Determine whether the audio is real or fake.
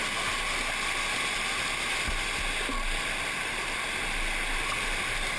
real